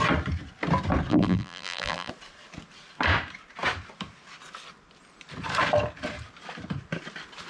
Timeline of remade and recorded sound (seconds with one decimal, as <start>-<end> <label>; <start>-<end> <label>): 0.0-1.1 recorded; 1.1-2.1 remade; 2.1-7.5 recorded